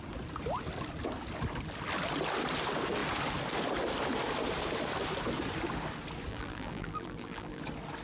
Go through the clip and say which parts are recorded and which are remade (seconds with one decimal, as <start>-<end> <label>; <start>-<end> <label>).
0.0-6.3 recorded; 6.3-7.6 remade; 7.6-8.0 recorded